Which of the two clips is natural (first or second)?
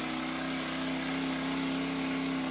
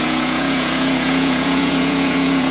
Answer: first